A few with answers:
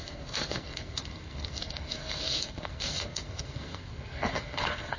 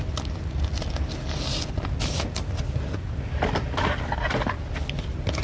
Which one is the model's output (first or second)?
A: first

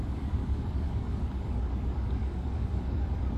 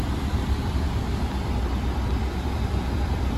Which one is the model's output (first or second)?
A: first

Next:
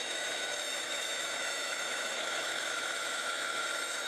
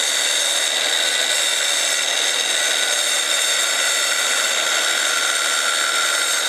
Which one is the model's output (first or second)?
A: first